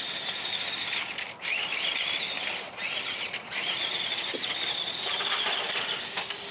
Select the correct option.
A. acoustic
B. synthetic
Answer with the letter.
A